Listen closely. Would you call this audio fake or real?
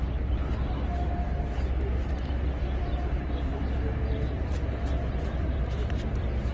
real